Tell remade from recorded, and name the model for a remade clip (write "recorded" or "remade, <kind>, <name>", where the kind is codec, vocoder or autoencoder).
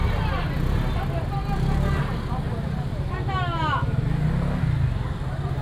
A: recorded